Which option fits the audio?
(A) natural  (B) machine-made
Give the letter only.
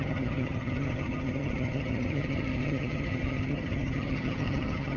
B